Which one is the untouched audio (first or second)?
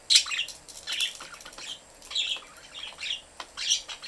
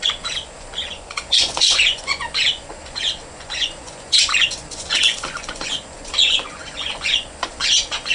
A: first